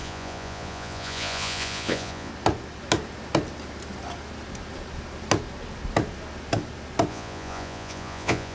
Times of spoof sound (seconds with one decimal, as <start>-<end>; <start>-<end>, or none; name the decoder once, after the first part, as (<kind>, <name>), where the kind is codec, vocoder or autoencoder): 0.0-2.3 (vocoder, Vocos); 7.1-8.5